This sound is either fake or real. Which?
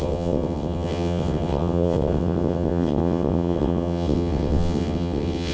fake